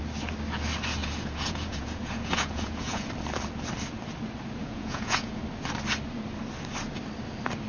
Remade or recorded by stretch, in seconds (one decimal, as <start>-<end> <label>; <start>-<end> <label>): 0.0-1.0 recorded; 1.0-3.1 remade; 3.1-4.6 recorded; 4.6-5.4 remade; 5.4-7.7 recorded